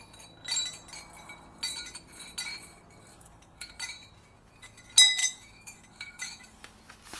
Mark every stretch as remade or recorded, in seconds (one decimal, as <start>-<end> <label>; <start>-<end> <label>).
0.0-3.1 recorded; 3.1-3.7 remade; 3.7-5.2 recorded; 5.2-6.7 remade; 6.7-7.2 recorded